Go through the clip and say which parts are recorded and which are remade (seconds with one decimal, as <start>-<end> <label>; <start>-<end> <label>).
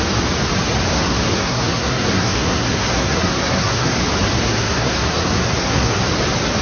0.0-0.9 recorded; 0.9-4.0 remade; 4.0-4.4 recorded; 4.4-6.0 remade; 6.0-6.6 recorded